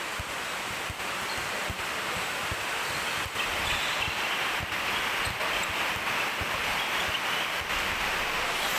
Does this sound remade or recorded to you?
recorded